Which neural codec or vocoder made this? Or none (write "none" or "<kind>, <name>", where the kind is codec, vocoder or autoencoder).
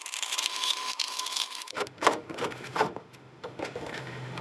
autoencoder, DAC-VAE